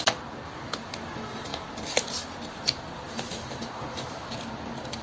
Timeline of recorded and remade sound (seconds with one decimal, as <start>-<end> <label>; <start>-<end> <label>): 0.0-5.0 recorded